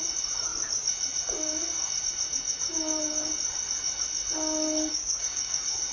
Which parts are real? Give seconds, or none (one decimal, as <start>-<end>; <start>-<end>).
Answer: 0.0-4.9